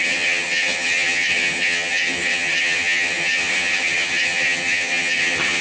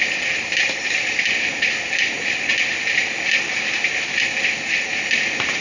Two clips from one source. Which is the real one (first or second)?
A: second